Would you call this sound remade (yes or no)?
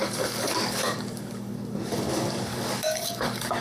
yes